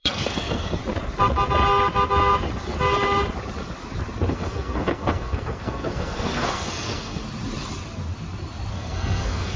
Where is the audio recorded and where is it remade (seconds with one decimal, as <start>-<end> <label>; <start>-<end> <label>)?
0.0-0.8 remade; 0.8-4.3 recorded; 4.3-7.2 remade; 7.2-8.7 recorded; 8.7-9.6 remade